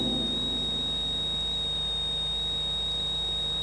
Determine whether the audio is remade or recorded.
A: recorded